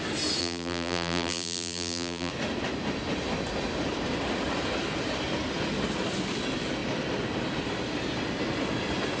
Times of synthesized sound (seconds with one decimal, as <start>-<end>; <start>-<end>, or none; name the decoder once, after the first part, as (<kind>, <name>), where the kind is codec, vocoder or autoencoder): 0.4-2.3 (vocoder, BigVGAN v2)